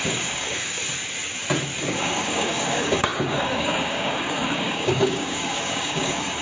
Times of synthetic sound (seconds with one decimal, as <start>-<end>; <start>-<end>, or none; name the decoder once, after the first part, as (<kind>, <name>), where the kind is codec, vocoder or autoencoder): 0.0-0.8 (codec, DAC); 1.9-6.4